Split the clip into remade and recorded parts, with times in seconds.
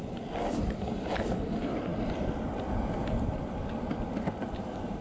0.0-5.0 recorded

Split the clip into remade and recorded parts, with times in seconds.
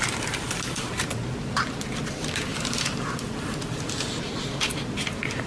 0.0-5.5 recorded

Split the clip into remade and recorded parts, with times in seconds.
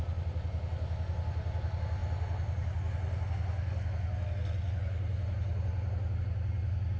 0.0-7.0 recorded